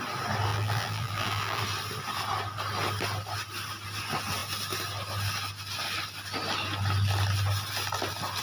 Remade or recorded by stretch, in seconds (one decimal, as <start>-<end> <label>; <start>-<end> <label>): 0.0-0.5 recorded; 0.5-1.6 remade; 1.6-8.4 recorded